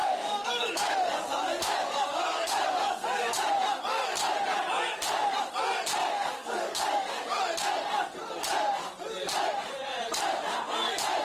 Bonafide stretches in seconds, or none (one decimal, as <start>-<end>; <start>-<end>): 3.5-6.0; 7.4-11.2